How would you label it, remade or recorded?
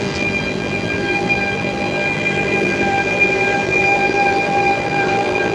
remade